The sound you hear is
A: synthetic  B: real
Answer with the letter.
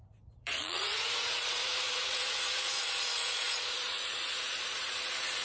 A